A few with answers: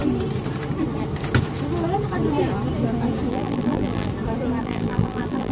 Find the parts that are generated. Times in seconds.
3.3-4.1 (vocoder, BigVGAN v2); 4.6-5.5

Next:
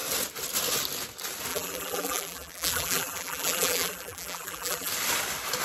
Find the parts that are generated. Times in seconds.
1.5-4.9 (vocoder, BigVGAN v2)

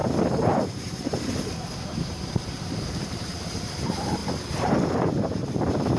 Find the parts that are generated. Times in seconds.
0.0-6.0 (vocoder, BigVGAN v2)

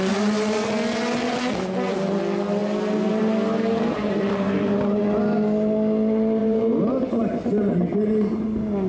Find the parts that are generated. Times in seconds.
3.7-5.0 (vocoder, BigVGAN v2); 6.4-7.2